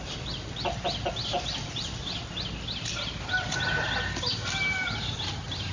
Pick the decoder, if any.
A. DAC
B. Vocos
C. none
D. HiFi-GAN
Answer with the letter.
C